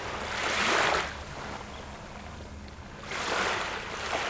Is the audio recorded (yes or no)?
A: yes